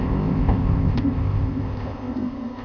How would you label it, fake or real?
fake